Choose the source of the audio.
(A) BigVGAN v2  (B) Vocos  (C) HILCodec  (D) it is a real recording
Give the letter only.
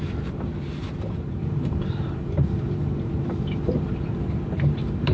A